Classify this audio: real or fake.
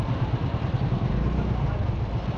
real